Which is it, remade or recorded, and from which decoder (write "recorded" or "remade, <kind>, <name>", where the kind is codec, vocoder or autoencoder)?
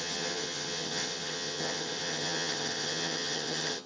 remade, vocoder, HiFi-GAN